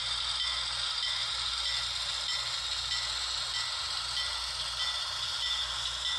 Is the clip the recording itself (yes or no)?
yes